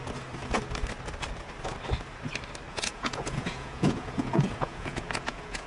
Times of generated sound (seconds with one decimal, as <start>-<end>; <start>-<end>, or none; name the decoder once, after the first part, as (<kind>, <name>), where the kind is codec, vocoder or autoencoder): 2.7-5.7 (vocoder, Vocos)